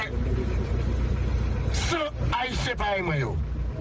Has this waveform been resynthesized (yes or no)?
no